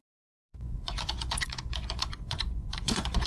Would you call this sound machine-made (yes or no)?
yes